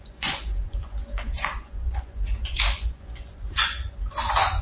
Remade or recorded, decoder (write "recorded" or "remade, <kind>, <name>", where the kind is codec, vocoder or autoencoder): remade, vocoder, Vocos